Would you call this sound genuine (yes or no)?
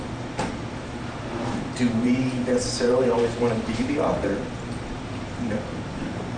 no